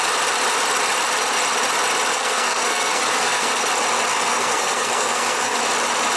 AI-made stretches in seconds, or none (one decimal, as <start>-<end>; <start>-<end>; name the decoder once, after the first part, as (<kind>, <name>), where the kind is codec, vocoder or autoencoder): 2.1-3.5 (codec, SNAC); 4.1-5.6